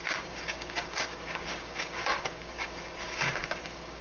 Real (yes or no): no